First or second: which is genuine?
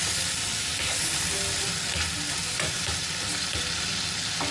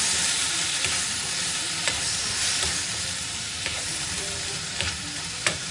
first